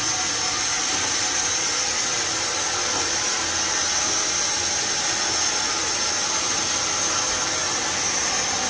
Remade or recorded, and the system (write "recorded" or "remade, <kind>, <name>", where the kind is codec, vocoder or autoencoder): recorded